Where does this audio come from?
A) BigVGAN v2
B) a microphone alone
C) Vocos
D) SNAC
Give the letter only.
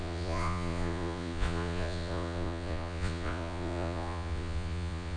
C